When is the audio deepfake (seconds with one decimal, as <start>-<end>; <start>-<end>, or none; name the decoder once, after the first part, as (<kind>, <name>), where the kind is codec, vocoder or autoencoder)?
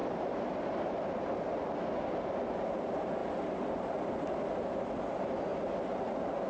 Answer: 0.0-1.6 (vocoder, BigVGAN v2)